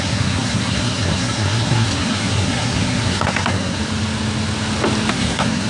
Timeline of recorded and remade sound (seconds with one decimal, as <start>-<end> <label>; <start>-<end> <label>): 0.0-3.8 remade; 3.8-5.1 recorded; 5.1-5.7 remade